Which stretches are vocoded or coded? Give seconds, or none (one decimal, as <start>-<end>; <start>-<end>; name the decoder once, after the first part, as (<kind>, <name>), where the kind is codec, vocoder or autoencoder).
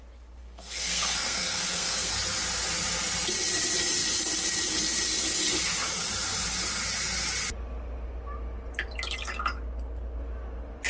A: 0.4-2.1 (codec, SNAC)